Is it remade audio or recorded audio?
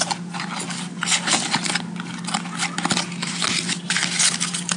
recorded